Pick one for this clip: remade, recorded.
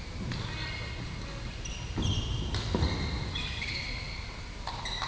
recorded